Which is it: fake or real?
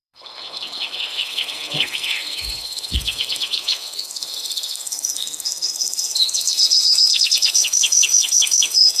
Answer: fake